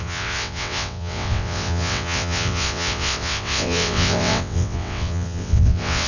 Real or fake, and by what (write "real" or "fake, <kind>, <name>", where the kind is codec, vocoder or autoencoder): fake, vocoder, WaveNeXt